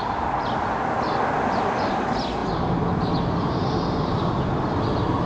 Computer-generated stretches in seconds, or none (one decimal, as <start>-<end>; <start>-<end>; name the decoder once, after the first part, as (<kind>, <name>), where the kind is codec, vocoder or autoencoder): none